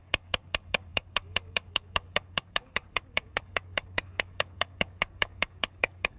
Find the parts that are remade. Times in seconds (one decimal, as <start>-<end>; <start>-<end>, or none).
0.0-6.2